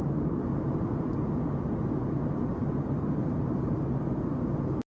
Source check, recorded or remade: recorded